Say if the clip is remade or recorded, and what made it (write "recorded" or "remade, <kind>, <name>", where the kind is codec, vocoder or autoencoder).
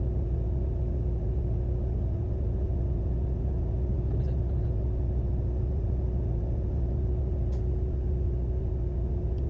recorded